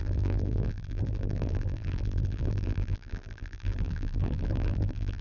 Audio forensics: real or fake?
fake